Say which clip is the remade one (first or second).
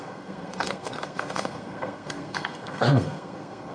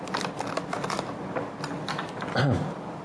first